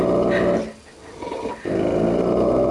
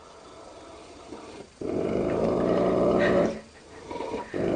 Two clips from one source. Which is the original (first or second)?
first